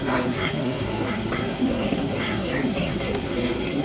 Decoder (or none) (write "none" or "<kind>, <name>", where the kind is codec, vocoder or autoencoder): codec, SNAC